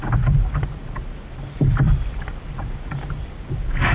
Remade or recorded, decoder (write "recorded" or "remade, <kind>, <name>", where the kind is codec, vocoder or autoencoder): recorded